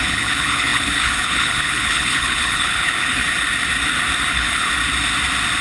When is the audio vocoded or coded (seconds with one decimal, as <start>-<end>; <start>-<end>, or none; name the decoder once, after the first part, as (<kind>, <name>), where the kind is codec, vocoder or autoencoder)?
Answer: 0.0-3.2 (codec, HILCodec); 4.3-4.7